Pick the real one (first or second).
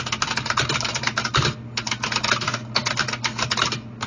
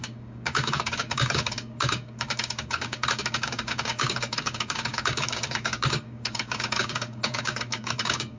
first